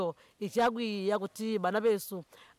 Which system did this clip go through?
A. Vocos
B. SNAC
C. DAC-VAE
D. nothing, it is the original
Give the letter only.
D